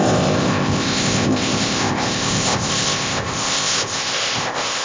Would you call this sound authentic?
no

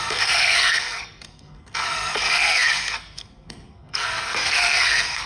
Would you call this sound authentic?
no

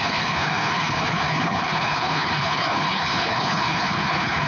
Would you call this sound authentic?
no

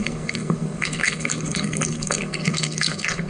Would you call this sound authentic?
no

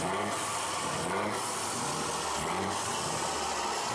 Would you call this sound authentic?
yes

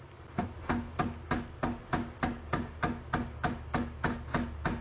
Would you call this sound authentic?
yes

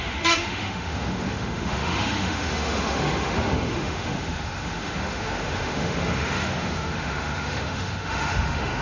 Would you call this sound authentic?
no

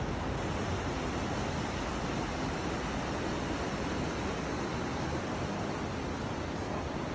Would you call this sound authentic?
yes